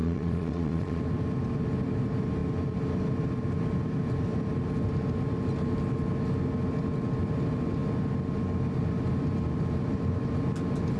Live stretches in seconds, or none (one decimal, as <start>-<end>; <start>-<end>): 1.0-11.0